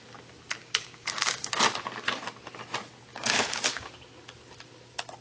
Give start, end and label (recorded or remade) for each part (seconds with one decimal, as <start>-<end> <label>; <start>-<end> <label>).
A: 0.0-0.6 recorded; 0.6-1.6 remade; 1.6-3.1 recorded; 3.1-3.9 remade; 3.9-5.2 recorded